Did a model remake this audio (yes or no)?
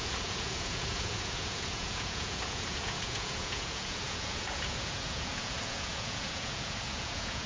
yes